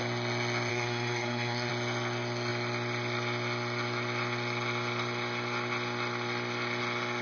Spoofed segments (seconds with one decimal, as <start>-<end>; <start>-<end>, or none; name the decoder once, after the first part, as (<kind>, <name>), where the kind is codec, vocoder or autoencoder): 0.7-1.7 (codec, SNAC)